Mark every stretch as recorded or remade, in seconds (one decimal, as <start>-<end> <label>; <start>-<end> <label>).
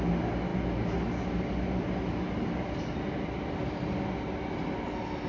0.0-5.3 recorded